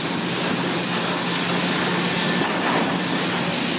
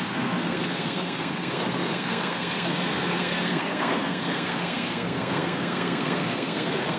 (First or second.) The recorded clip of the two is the first